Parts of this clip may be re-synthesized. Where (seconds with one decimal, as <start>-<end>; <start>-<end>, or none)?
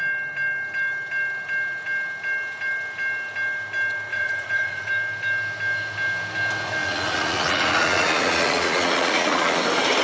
4.1-4.9; 6.8-9.6